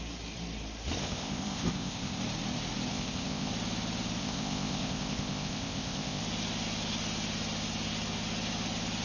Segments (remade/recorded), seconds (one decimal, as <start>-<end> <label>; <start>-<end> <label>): 0.0-1.0 recorded; 1.0-2.2 remade; 2.2-2.9 recorded; 2.9-3.5 remade; 3.5-4.2 recorded; 4.2-6.2 remade; 6.2-9.0 recorded